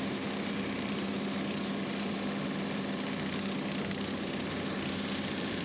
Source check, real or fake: real